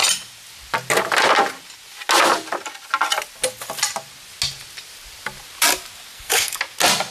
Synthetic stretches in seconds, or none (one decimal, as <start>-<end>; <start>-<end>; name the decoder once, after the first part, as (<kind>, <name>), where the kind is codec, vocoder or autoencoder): 6.1-6.6 (codec, SNAC)